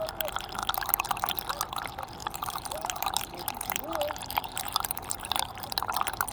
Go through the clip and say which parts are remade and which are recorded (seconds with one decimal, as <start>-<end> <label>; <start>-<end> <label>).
0.0-2.2 recorded; 2.2-6.3 remade